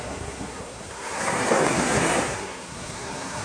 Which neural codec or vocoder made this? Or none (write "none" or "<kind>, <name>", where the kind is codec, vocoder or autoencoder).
codec, SNAC